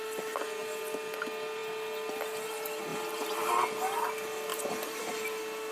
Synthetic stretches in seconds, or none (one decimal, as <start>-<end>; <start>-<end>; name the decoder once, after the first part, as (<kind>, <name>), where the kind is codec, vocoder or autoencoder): 2.9-3.5 (vocoder, BigVGAN v2); 4.5-5.1